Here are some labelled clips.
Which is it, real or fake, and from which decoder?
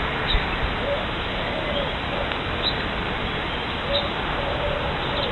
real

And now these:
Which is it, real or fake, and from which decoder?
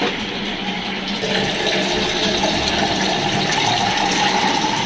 real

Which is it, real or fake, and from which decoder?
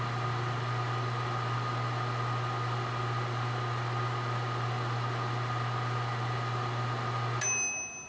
real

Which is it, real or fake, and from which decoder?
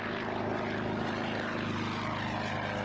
real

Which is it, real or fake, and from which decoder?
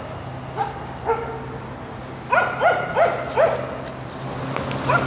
real